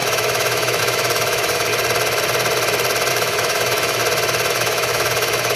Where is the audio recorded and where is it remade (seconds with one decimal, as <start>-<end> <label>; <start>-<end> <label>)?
0.0-1.7 remade; 1.7-3.1 recorded; 3.1-4.0 remade; 4.0-4.5 recorded; 4.5-5.6 remade